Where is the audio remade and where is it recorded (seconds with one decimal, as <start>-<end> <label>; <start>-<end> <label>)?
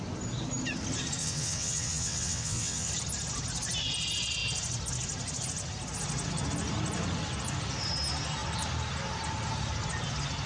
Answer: 0.0-1.2 recorded; 1.2-2.9 remade; 2.9-10.5 recorded